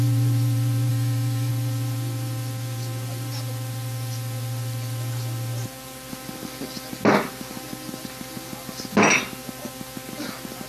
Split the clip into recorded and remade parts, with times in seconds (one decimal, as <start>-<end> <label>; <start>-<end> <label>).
0.0-0.9 recorded; 0.9-1.5 remade; 1.5-10.7 recorded